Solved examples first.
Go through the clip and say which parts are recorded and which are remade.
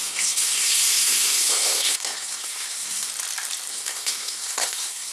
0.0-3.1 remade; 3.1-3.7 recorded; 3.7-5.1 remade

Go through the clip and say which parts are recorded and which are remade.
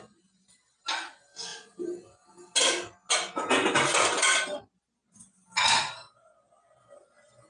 0.0-7.5 recorded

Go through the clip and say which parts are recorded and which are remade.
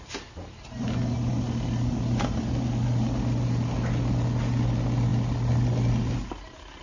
0.0-6.8 recorded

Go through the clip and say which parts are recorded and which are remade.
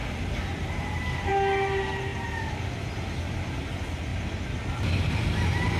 0.0-5.8 recorded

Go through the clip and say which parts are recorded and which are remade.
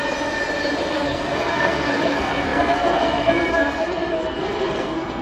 0.0-0.9 recorded; 0.9-5.2 remade